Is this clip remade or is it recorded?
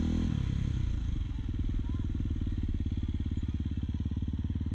recorded